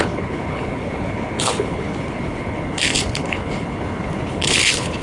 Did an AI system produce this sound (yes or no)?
yes